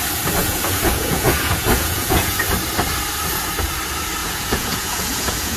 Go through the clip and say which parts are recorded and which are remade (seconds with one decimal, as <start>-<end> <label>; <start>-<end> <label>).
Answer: 0.0-0.4 recorded; 0.4-2.4 remade; 2.4-4.2 recorded; 4.2-5.6 remade